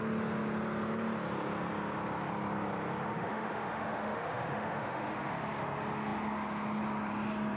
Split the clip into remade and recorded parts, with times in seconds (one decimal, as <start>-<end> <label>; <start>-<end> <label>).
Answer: 0.0-3.1 recorded; 3.1-5.3 remade; 5.3-7.6 recorded